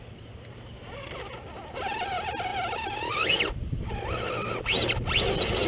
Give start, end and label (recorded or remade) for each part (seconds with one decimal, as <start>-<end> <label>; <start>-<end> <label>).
0.0-5.7 recorded